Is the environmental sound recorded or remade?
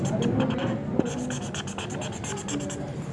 recorded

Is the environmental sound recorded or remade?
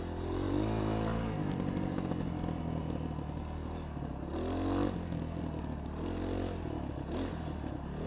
recorded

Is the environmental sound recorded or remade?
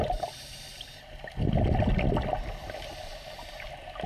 recorded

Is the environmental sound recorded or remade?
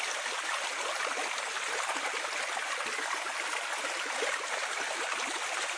recorded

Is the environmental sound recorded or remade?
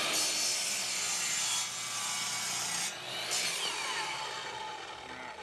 recorded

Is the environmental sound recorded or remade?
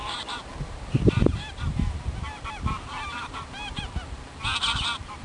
remade